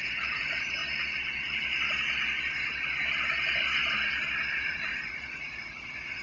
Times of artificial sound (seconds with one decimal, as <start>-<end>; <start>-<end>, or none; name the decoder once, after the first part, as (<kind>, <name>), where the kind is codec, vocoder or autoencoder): 0.0-0.8 (vocoder, Vocos); 4.5-6.2